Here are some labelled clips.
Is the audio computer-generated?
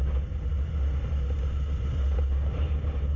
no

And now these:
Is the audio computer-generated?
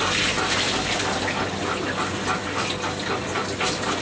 no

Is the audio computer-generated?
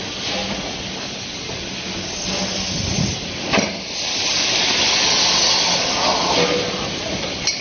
no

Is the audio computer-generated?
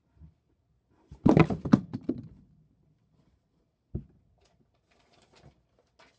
no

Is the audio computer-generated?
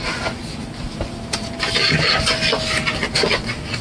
no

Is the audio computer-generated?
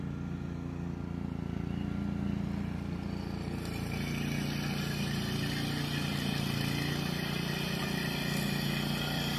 no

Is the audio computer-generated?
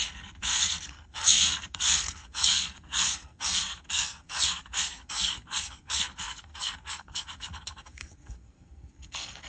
yes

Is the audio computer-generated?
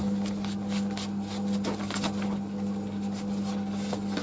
no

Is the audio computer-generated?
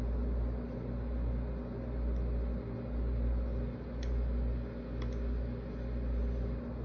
no